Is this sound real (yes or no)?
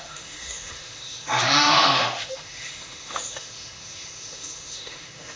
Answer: no